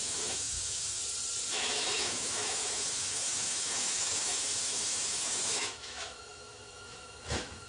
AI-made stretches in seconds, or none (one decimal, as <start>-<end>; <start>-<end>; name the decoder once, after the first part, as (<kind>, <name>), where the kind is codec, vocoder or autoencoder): 0.0-1.0 (autoencoder, DAC-VAE); 1.5-7.7